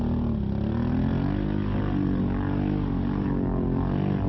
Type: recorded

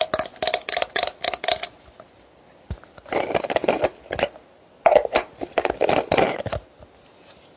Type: recorded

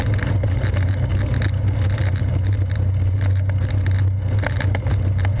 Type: recorded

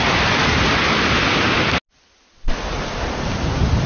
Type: recorded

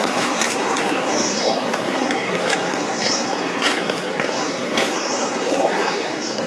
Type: remade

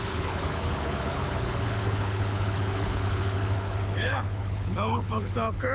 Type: remade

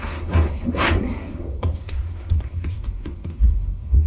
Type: remade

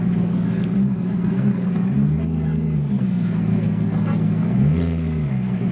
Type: remade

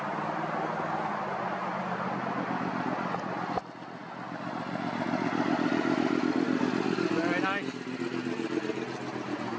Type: recorded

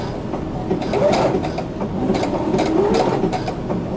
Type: recorded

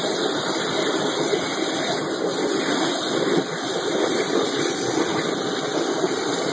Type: remade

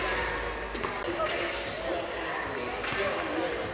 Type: recorded